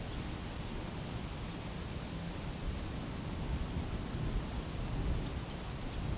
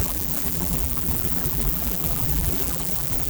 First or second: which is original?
first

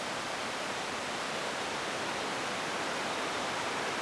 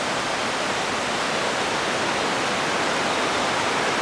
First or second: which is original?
second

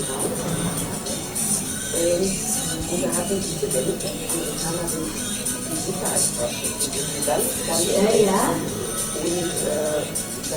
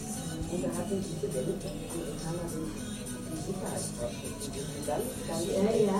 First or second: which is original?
second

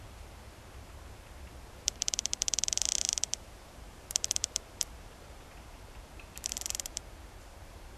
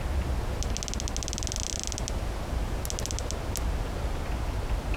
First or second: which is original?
second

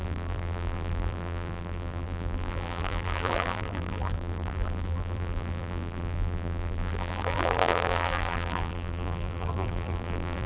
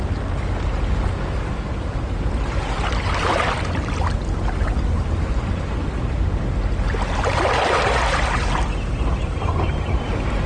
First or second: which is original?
second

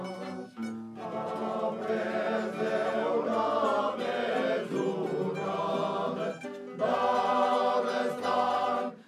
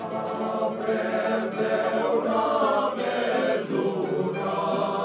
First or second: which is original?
first